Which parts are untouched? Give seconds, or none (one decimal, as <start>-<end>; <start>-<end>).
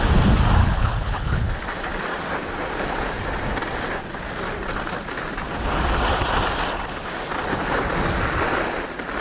0.0-0.6; 1.5-9.2